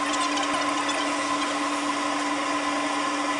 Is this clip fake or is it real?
real